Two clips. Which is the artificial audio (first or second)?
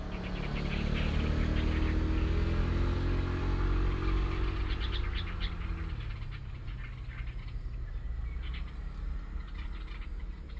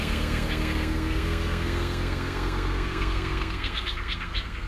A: second